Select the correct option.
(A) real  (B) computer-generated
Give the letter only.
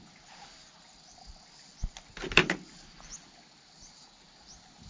A